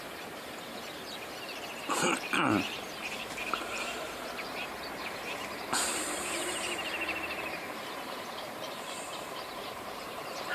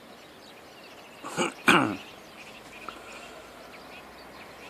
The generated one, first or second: first